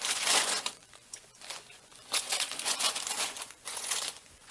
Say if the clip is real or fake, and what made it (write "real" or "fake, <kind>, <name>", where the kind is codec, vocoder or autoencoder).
fake, vocoder, Vocos